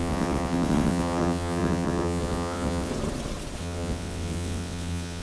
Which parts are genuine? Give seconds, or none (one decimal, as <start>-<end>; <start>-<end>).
2.9-3.6